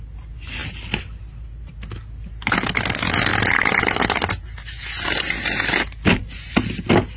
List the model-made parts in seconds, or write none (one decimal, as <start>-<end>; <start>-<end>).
none